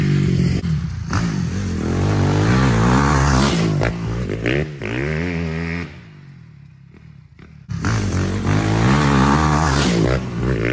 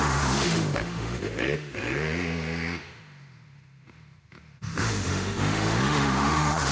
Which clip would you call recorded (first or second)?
first